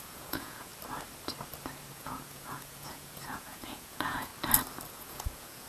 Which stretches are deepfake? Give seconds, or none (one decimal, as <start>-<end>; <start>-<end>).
0.0-0.7; 1.9-4.3; 4.9-5.7